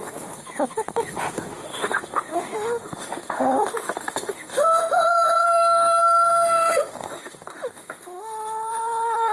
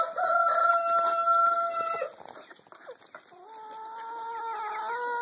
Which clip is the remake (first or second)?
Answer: first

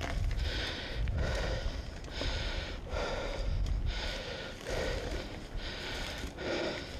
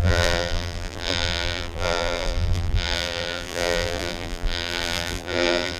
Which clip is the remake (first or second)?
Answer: second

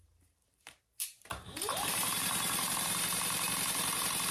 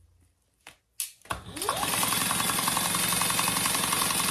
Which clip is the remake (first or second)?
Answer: first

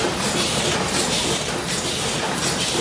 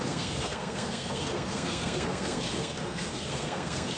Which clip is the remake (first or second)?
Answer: second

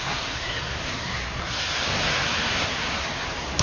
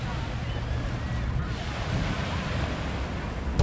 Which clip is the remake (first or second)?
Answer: first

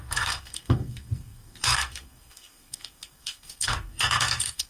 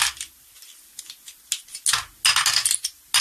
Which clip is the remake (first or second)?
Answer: first